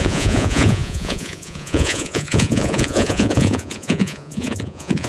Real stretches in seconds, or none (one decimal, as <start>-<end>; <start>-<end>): none